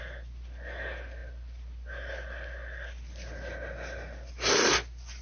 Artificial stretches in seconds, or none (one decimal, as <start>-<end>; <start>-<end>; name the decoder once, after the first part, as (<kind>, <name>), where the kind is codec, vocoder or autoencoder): none